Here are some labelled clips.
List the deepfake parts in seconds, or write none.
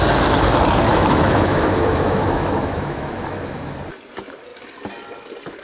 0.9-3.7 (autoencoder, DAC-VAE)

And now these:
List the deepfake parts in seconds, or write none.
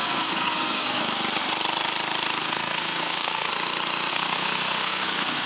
0.0-1.0 (codec, SNAC); 2.4-3.5; 4.1-5.5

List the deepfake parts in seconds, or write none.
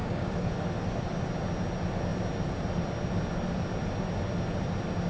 0.0-0.5 (codec, DAC)